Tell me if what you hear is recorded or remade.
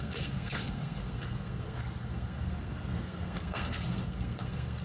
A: remade